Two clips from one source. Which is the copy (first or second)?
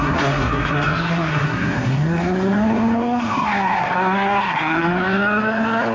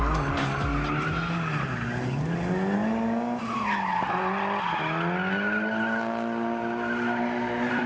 first